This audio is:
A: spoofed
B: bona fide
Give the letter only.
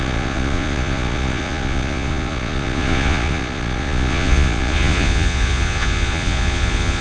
A